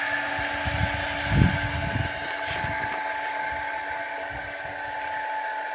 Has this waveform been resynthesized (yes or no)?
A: no